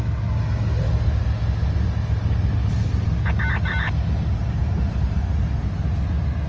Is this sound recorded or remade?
recorded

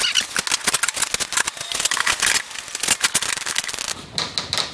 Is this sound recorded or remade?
recorded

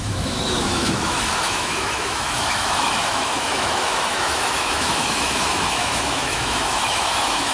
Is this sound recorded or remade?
remade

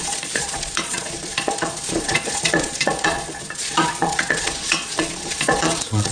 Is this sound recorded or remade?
remade